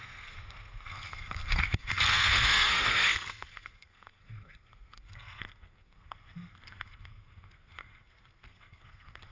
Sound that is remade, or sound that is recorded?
remade